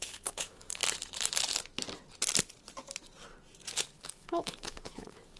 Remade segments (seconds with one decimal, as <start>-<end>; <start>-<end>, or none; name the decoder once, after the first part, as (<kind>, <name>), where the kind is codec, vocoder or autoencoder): 0.0-0.8 (autoencoder, DAC-VAE); 4.0-5.4